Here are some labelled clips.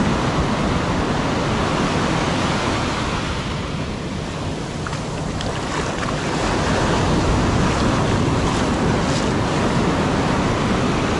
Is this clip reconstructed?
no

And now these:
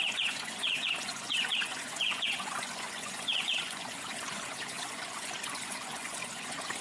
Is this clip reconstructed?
yes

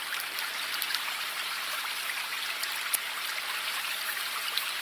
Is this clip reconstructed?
no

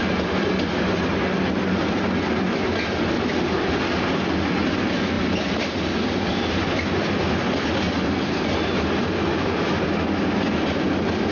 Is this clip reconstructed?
no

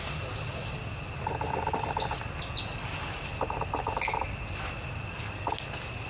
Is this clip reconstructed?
no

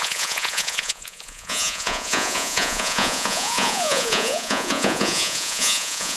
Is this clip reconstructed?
yes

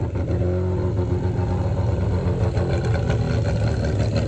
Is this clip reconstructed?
no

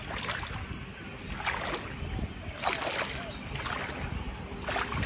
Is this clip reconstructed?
no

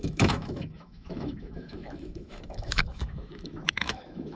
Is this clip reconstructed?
yes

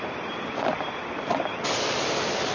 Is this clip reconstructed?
no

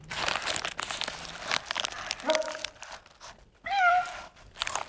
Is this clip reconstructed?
no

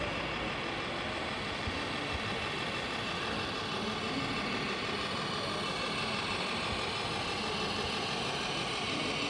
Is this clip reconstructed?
no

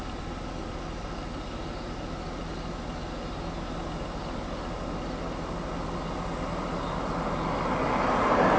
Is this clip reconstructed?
no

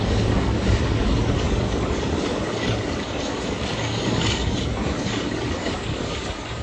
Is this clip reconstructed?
yes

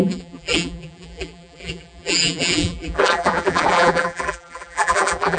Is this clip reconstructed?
yes